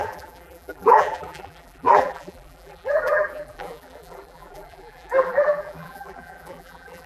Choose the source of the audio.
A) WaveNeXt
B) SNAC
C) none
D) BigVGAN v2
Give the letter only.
D